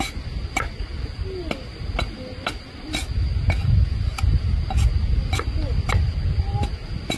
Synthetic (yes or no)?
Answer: no